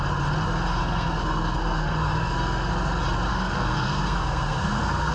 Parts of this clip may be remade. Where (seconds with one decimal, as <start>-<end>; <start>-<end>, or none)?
0.8-2.7; 3.3-5.1